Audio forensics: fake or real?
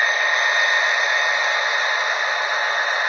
real